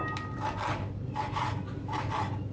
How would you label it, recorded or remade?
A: recorded